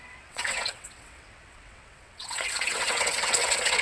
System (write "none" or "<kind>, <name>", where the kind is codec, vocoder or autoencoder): vocoder, WaveNeXt